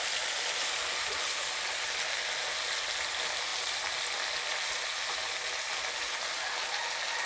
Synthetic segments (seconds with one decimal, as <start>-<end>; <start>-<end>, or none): none